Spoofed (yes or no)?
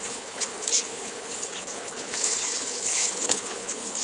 yes